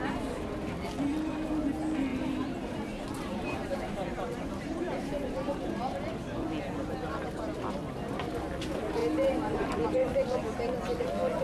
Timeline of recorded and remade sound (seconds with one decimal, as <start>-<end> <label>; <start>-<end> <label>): 0.0-2.1 recorded; 2.1-5.7 remade; 5.7-9.0 recorded; 9.0-9.7 remade; 9.7-11.4 recorded